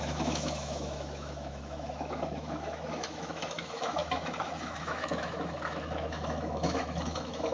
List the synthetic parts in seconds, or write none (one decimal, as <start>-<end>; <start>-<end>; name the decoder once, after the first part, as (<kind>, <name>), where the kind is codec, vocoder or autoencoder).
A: 0.0-7.5 (autoencoder, DAC-VAE)